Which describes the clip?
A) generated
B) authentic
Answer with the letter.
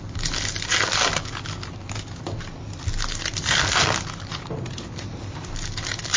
B